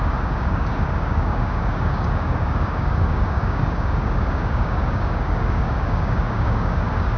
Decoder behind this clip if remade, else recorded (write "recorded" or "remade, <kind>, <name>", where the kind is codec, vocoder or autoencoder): remade, codec, DAC